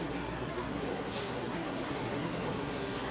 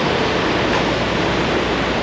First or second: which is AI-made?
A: first